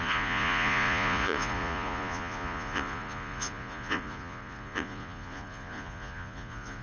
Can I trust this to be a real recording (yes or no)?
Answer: no